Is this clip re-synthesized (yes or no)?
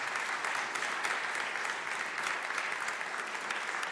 no